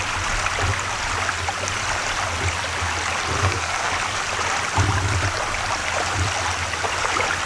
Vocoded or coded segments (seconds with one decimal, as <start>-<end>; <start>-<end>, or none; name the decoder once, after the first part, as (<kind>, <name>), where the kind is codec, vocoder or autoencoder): 3.4-3.9 (codec, SNAC)